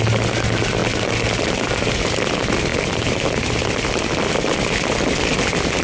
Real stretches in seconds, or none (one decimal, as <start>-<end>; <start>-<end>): 0.0-2.7; 4.3-5.8